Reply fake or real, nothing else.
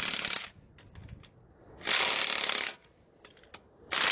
real